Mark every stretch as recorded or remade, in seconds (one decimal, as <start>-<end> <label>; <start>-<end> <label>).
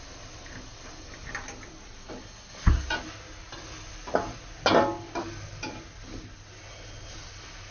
0.0-7.7 recorded